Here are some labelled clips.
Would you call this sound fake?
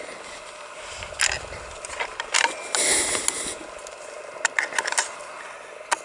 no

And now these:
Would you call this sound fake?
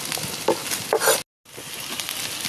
no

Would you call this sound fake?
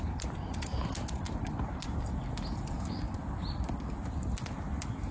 no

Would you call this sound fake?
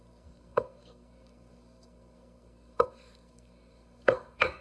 yes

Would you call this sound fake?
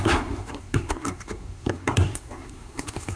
yes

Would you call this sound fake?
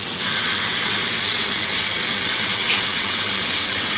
yes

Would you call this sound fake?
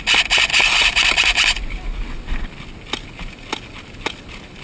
no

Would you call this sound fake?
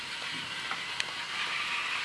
no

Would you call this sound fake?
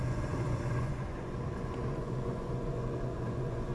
yes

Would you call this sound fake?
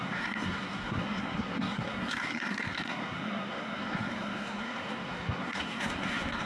yes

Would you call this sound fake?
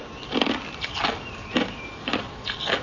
no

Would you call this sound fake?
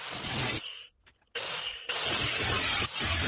no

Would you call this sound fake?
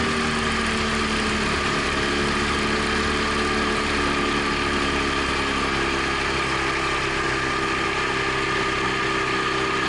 no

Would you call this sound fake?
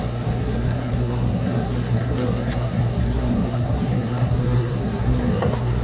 yes